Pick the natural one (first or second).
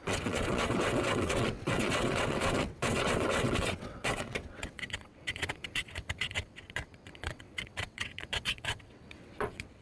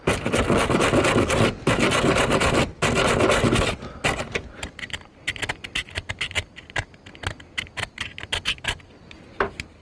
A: second